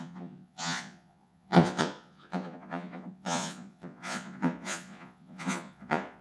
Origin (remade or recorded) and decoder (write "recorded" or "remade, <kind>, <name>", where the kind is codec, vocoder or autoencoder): remade, vocoder, Vocos